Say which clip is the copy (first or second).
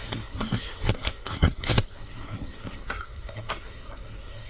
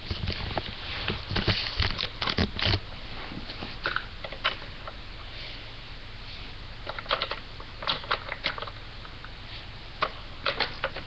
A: first